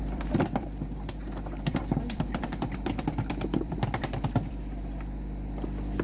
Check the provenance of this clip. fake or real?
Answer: fake